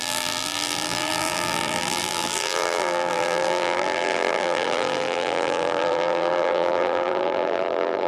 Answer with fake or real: fake